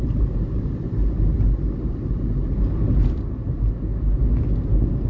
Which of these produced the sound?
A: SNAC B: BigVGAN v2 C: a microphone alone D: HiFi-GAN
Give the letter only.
C